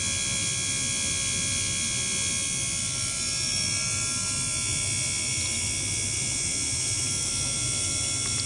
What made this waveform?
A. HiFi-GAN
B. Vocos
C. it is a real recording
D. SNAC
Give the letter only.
C